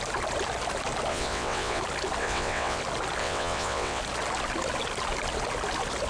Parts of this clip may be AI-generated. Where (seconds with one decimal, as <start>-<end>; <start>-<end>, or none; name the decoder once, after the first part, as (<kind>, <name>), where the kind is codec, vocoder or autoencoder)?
1.1-1.8 (vocoder, WaveNeXt); 2.2-2.8; 3.2-4.0